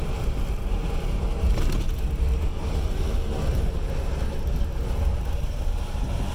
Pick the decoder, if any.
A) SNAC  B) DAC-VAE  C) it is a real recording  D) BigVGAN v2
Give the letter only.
C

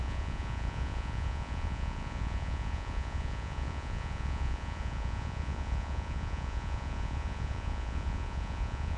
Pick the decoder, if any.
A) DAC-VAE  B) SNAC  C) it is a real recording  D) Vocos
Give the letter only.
D